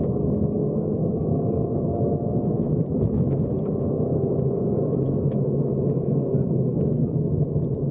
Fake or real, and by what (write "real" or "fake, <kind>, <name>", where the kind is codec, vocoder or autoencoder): fake, autoencoder, DAC-VAE